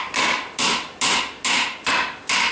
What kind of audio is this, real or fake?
real